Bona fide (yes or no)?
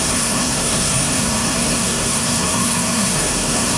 no